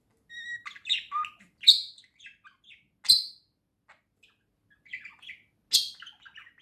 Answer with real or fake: real